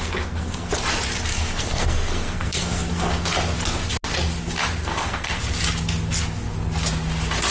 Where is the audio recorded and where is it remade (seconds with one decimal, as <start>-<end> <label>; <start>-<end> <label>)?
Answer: 0.0-0.7 remade; 0.7-1.3 recorded; 1.3-3.3 remade; 3.3-4.8 recorded; 4.8-5.4 remade; 5.4-7.5 recorded